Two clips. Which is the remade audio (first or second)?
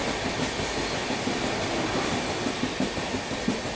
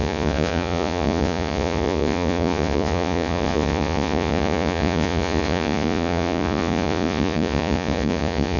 second